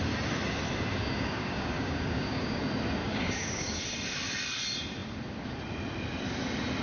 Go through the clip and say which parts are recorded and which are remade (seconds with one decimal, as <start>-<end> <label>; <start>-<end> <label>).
0.0-0.9 recorded; 0.9-2.6 remade; 2.6-3.0 recorded; 3.0-3.8 remade; 3.8-6.8 recorded